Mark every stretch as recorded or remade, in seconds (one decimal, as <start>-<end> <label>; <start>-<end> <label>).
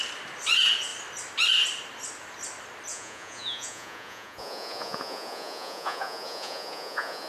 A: 0.0-2.9 recorded; 2.9-7.3 remade